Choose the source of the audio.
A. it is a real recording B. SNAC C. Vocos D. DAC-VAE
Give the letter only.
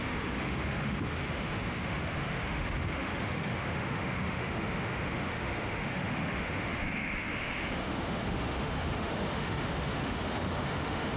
D